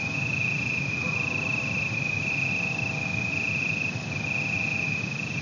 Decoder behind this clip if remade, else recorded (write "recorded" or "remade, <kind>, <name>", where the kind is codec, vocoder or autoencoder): recorded